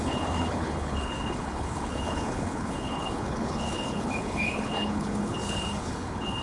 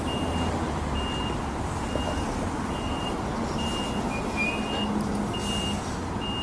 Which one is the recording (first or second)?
second